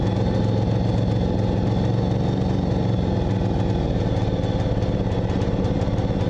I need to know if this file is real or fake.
real